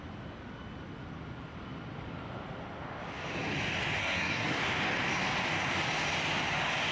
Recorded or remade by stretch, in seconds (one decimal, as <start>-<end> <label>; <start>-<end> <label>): 0.0-4.0 recorded; 4.0-4.6 remade; 4.6-6.9 recorded